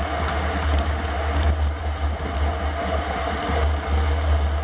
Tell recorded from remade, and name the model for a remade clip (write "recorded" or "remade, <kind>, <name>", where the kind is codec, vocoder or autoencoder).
recorded